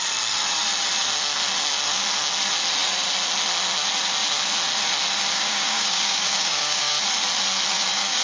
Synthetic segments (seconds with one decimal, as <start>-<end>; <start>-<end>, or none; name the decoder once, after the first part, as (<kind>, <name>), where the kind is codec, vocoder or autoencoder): 5.3-6.9 (codec, DAC); 7.7-8.2

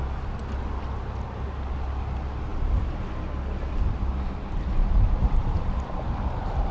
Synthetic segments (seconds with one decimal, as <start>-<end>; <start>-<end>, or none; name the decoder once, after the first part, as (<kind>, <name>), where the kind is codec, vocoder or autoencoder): none

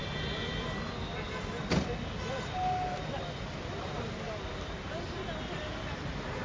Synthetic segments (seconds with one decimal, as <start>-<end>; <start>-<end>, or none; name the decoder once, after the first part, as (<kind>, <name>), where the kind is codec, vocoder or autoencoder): none

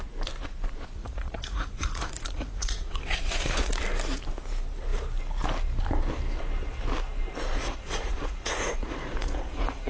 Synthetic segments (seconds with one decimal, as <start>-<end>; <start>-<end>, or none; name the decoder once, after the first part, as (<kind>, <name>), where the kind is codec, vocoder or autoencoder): 1.0-3.7 (vocoder, Vocos); 7.6-9.9

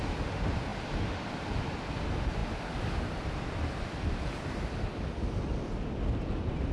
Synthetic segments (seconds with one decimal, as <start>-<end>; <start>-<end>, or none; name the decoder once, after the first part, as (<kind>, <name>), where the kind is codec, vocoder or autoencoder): none